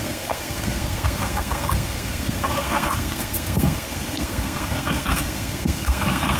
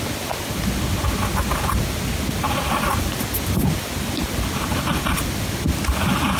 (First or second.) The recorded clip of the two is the second